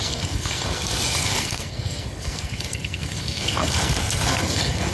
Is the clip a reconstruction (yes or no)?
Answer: yes